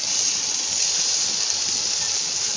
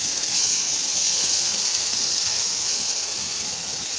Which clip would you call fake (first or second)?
second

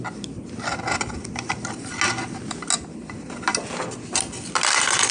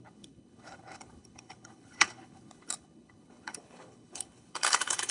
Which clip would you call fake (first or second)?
second